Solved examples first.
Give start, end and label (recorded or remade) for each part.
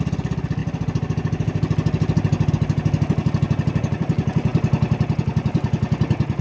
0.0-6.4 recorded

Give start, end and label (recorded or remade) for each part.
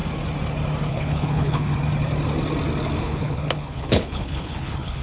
0.0-0.9 recorded; 0.9-1.7 remade; 1.7-3.0 recorded; 3.0-5.0 remade